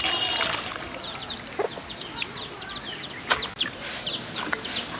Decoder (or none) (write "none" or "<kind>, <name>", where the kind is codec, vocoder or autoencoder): none